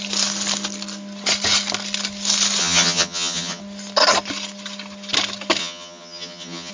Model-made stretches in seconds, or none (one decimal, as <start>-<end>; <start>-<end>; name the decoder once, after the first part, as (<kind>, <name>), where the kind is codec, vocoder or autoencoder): 2.6-3.6 (vocoder, HiFi-GAN); 5.6-6.7

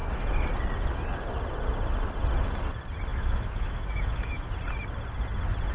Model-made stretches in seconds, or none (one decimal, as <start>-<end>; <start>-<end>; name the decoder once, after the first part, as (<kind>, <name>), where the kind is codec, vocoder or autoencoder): 3.1-4.5 (autoencoder, DAC-VAE)